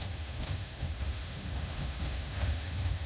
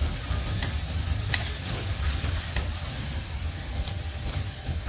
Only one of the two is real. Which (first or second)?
second